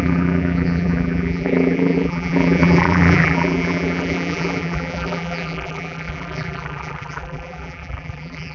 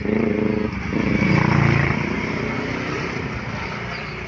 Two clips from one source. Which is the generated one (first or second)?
first